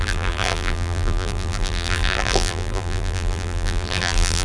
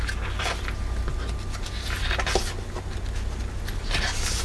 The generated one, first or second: first